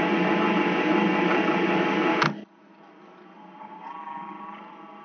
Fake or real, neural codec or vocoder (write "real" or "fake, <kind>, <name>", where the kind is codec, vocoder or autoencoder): real